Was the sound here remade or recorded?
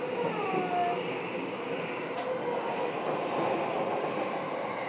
recorded